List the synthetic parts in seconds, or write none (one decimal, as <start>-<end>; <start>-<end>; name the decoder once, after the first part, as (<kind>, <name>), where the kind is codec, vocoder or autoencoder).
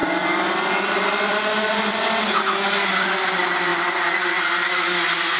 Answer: 0.0-2.2 (vocoder, BigVGAN v2)